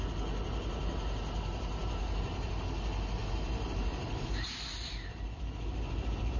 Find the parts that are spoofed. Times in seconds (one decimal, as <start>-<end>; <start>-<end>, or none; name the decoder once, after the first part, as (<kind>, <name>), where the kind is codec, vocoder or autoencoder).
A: 1.8-2.5 (vocoder, BigVGAN v2); 3.2-5.4